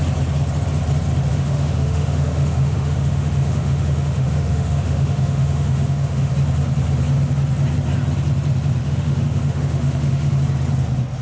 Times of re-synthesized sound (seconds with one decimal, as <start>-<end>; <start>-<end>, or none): 1.3-6.3; 8.8-10.4